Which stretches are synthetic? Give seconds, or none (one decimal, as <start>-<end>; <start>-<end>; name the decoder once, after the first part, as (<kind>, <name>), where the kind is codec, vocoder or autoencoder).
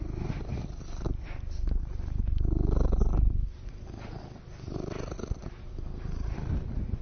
0.0-7.0 (vocoder, BigVGAN v2)